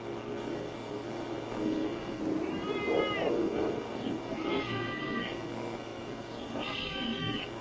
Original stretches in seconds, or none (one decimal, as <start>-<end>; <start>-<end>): 2.2-3.3